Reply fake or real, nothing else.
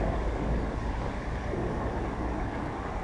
fake